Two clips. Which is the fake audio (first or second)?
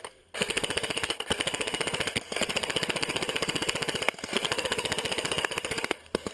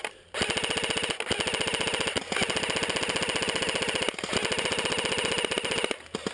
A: first